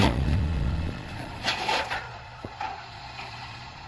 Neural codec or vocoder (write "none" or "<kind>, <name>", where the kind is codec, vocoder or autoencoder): vocoder, Vocos